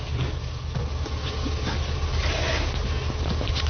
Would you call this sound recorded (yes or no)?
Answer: yes